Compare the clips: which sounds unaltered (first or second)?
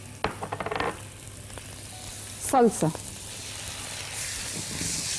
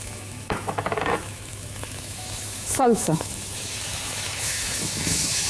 first